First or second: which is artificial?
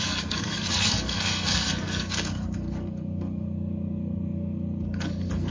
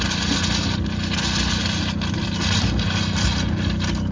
first